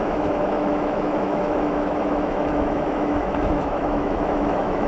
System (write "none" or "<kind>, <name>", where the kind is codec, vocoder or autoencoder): autoencoder, DAC-VAE